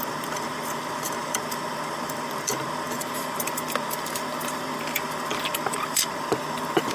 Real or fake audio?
fake